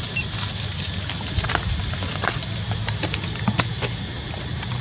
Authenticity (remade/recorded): recorded